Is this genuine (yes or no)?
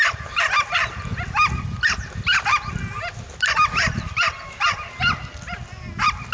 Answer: yes